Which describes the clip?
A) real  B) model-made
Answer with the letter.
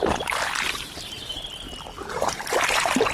A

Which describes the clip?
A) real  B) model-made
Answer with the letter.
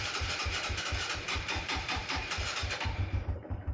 B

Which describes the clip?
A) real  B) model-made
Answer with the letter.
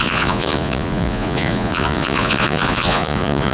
B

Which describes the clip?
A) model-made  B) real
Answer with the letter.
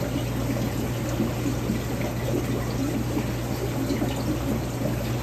B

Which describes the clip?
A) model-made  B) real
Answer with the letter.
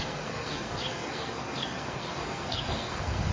A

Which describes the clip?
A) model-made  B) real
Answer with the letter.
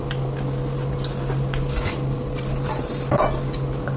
B